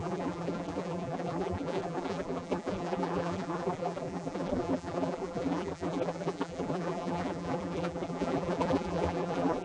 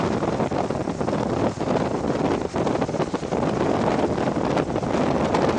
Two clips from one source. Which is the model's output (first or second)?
first